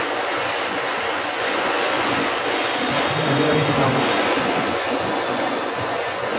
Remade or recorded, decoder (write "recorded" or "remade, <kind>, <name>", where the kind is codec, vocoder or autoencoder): remade, vocoder, Vocos